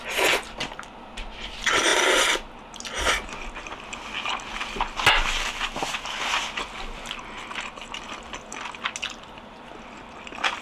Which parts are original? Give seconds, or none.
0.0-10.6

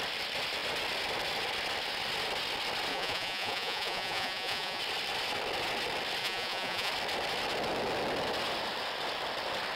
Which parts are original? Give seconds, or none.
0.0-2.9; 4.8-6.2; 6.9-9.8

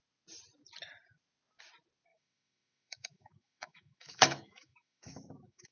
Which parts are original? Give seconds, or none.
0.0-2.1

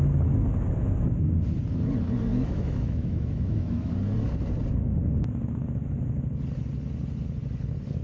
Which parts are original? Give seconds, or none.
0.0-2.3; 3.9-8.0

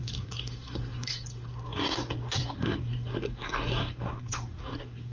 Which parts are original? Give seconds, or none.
none

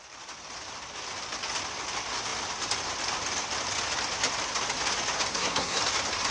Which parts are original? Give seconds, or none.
0.0-5.3; 5.8-6.3